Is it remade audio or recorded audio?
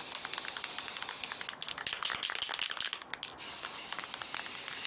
recorded